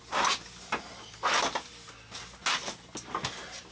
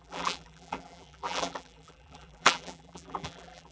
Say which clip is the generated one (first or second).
second